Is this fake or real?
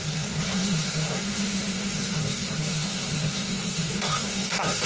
fake